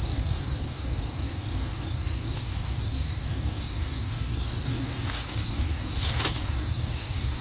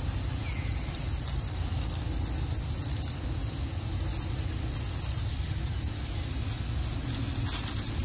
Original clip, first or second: second